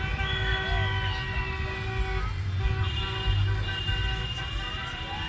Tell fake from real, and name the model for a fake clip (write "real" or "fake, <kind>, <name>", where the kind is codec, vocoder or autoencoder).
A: real